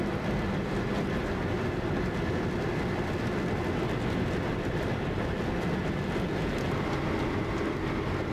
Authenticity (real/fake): real